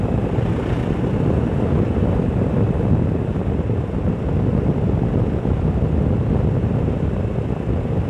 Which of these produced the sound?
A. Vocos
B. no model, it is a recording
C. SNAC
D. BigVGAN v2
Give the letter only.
B